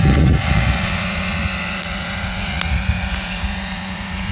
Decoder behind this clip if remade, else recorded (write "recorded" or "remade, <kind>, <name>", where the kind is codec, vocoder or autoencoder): remade, vocoder, Vocos